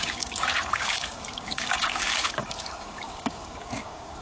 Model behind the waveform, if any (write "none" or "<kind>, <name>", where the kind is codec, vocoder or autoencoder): codec, DAC